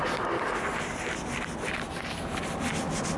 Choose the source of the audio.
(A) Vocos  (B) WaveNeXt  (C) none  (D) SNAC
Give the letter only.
C